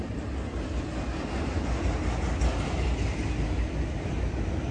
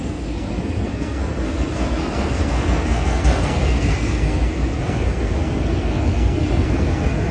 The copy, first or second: second